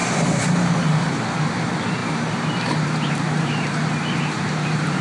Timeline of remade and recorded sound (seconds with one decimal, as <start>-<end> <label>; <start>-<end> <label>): 0.0-1.5 remade; 1.5-2.0 recorded; 2.0-5.0 remade